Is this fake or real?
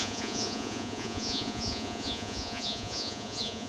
fake